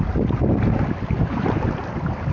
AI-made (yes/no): no